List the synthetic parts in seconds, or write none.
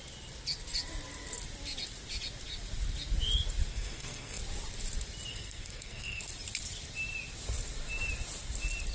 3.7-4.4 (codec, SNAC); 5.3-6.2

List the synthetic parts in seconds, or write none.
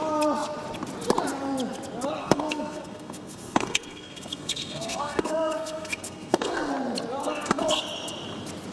2.2-6.7 (codec, SNAC); 7.2-7.8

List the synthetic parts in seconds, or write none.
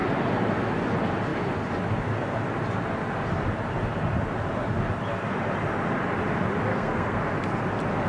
6.7-7.2 (codec, SNAC)